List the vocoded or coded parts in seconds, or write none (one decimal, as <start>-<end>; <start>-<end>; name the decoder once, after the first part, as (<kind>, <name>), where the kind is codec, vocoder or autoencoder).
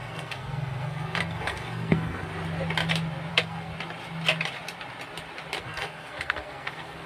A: 0.0-2.3 (codec, SNAC); 3.3-3.7; 5.6-7.1